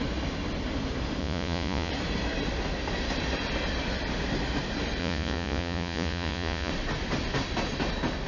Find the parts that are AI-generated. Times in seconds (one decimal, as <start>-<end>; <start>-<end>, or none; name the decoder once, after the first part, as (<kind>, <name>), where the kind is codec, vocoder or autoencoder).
1.2-1.9 (vocoder, Vocos); 5.0-6.7